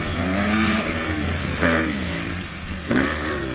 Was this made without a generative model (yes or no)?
no